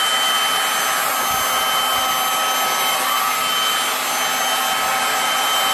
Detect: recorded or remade recorded